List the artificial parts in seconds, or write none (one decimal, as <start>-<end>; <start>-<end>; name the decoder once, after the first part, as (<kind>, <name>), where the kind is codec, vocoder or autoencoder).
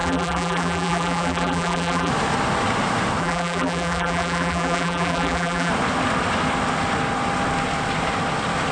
0.0-2.1 (vocoder, BigVGAN v2); 3.2-5.7